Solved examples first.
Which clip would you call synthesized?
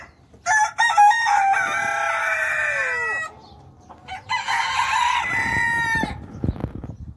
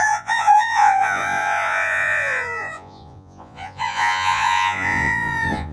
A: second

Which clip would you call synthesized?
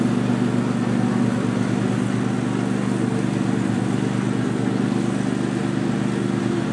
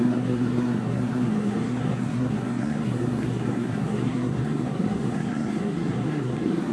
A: second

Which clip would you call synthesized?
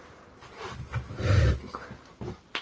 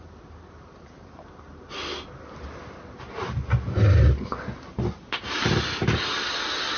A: first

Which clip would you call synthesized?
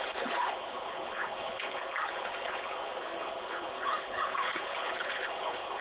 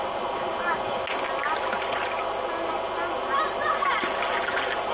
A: first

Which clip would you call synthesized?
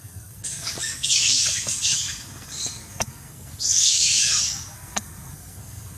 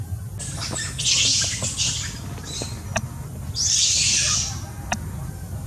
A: first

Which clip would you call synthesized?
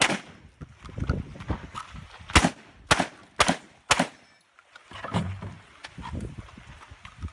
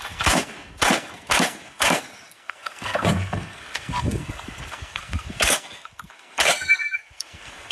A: second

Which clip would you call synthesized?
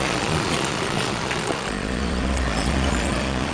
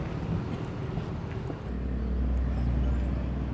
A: first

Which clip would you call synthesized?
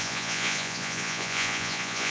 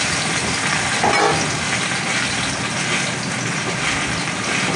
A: first